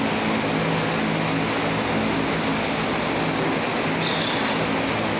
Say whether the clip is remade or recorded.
recorded